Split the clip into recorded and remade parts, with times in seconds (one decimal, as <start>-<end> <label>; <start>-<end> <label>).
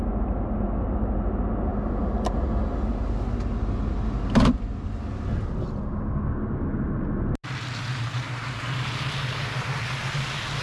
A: 0.0-10.6 recorded